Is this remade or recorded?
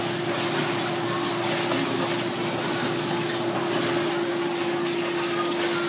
recorded